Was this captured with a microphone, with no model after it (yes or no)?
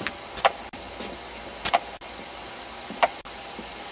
yes